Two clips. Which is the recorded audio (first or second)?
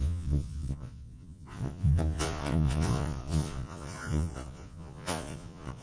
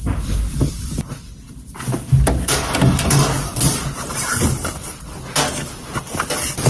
second